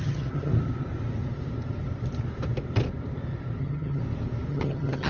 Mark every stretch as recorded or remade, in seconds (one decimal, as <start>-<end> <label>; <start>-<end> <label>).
0.0-0.5 remade; 0.5-3.6 recorded; 3.6-4.0 remade; 4.0-4.5 recorded; 4.5-5.1 remade